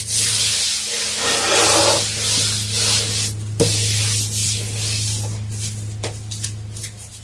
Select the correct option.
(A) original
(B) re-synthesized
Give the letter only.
A